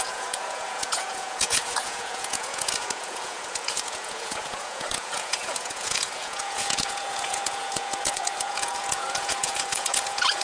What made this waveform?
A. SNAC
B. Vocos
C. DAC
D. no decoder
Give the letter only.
B